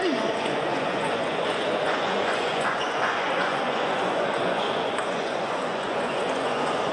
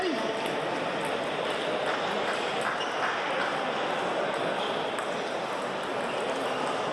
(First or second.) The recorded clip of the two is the second